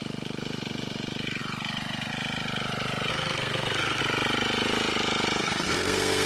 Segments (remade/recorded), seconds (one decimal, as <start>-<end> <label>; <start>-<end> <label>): 0.0-3.1 recorded; 3.1-4.0 remade; 4.0-5.4 recorded; 5.4-6.3 remade